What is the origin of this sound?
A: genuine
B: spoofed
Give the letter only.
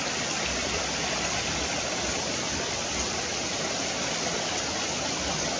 A